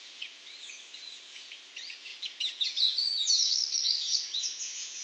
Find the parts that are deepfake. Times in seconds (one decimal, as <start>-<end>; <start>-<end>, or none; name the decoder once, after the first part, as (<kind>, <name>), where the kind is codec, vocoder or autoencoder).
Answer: none